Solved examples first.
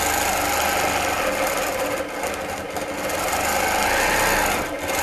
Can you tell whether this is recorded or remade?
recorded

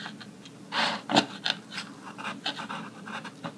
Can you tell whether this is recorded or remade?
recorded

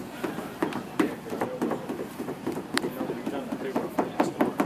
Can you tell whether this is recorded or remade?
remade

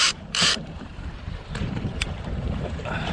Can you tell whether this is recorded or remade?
remade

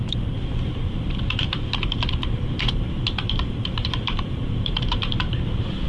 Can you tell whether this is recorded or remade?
remade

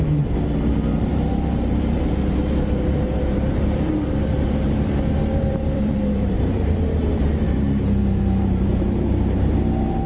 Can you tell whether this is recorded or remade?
remade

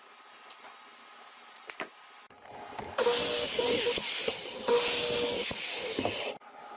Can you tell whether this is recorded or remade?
recorded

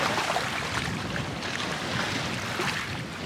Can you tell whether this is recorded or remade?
recorded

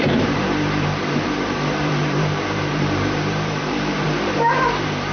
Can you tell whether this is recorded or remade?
remade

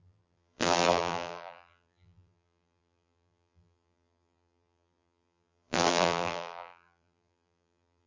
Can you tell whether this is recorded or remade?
remade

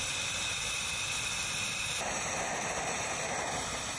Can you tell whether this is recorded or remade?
recorded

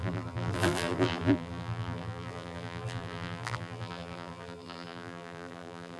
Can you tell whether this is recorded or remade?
remade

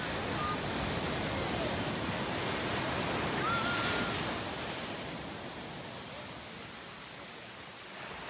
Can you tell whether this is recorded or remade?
recorded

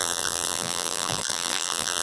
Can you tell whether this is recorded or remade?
remade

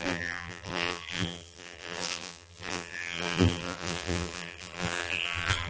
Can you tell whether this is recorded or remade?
remade